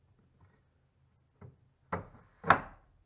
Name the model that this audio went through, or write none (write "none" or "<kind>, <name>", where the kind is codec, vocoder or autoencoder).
none